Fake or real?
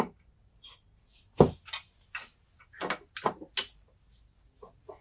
real